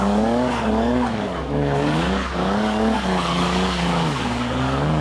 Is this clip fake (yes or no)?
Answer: yes